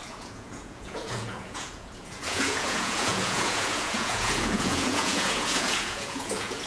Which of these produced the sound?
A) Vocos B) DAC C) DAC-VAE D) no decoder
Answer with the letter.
A